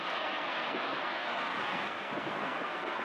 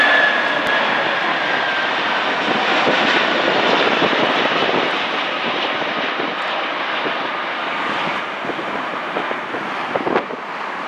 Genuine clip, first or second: second